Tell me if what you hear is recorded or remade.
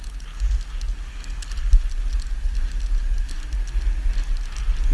recorded